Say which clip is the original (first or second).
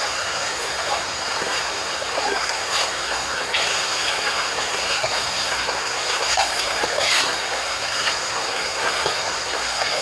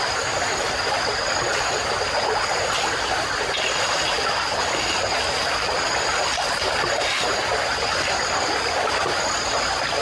second